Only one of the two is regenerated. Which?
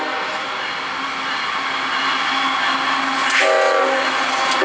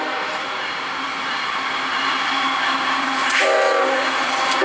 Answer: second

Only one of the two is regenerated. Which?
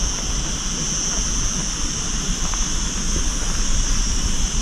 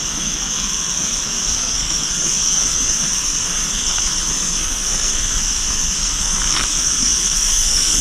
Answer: second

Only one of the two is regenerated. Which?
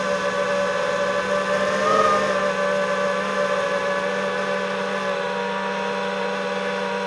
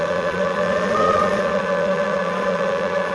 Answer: second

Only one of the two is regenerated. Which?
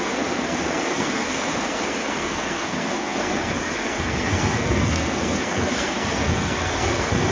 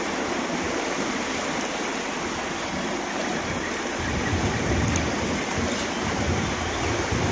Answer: first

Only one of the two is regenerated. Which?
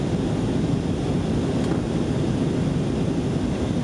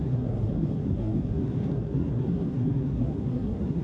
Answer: second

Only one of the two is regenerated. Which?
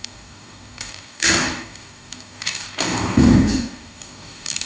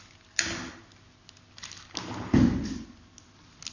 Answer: first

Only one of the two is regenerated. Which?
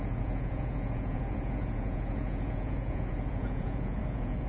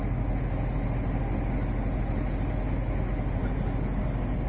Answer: first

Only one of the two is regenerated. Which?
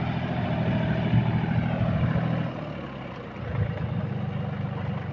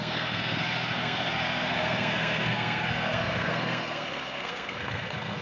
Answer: second